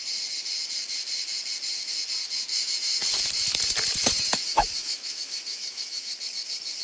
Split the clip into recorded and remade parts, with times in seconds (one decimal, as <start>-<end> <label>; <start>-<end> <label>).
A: 0.0-2.5 recorded; 2.5-3.2 remade; 3.2-4.0 recorded; 4.0-6.1 remade; 6.1-6.8 recorded